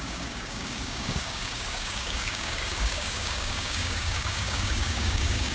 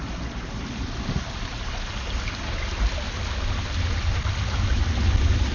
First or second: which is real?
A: second